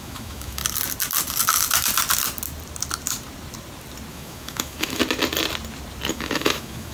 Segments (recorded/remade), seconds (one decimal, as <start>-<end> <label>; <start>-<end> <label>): 0.0-0.6 remade; 0.6-4.1 recorded; 4.1-5.0 remade; 5.0-6.1 recorded; 6.1-6.9 remade